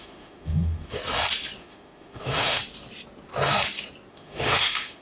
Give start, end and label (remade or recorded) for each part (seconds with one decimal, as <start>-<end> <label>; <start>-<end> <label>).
0.0-1.0 remade; 1.0-1.6 recorded; 1.6-2.6 remade; 2.6-4.1 recorded; 4.1-5.0 remade